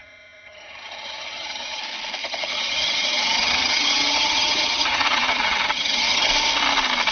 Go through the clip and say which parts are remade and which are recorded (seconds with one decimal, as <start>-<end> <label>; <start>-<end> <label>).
0.0-1.8 remade; 1.8-2.2 recorded; 2.2-6.3 remade; 6.3-7.1 recorded